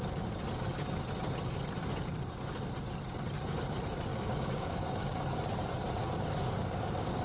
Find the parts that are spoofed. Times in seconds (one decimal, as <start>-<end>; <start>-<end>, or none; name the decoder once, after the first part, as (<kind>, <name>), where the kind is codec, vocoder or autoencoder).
4.1-5.2 (codec, DAC); 6.0-7.2